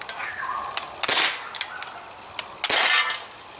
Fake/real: real